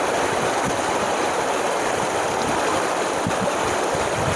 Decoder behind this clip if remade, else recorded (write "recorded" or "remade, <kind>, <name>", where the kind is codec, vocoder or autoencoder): recorded